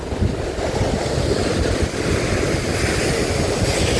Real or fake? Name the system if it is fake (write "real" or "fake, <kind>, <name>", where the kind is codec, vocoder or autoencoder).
real